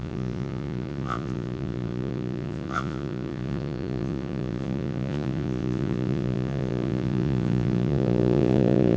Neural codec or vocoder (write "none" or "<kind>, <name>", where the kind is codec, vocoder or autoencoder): vocoder, Vocos